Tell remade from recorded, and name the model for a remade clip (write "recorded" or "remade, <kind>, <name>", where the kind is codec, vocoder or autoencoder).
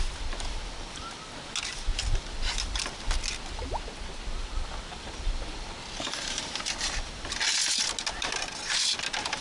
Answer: recorded